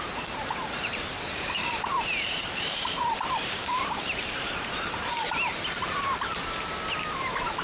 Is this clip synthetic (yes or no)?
yes